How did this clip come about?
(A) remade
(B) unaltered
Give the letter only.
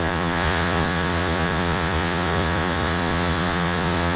A